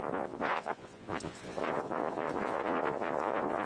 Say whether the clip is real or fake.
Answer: fake